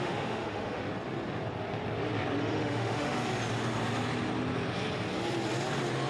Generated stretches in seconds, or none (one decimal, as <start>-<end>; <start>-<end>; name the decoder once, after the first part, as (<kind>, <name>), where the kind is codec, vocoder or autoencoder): 0.0-0.8 (autoencoder, DAC-VAE); 2.4-3.3